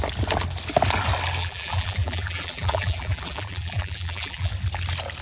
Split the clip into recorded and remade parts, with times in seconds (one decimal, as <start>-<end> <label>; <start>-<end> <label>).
0.0-1.4 recorded; 1.4-4.5 remade; 4.5-5.2 recorded